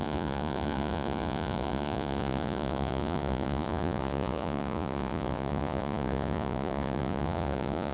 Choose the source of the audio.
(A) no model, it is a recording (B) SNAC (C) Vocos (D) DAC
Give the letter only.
C